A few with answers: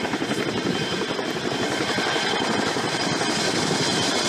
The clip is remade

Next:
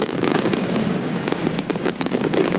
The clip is remade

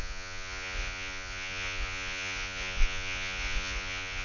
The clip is remade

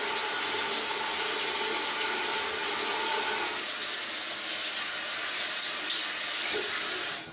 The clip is recorded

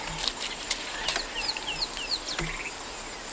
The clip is recorded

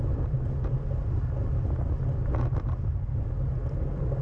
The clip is recorded